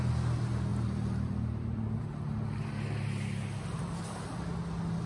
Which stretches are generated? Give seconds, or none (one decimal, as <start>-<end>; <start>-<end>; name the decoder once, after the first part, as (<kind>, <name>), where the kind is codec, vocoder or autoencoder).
0.7-2.0 (vocoder, BigVGAN v2)